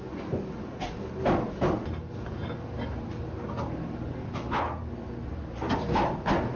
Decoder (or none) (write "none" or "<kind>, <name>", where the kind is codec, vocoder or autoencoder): none